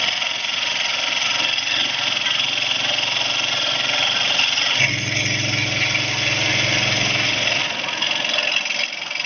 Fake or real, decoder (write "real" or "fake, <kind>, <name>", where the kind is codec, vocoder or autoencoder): real